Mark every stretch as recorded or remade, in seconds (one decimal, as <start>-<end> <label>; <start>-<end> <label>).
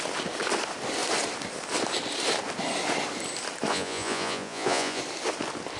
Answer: 0.0-3.7 recorded; 3.7-5.0 remade; 5.0-5.8 recorded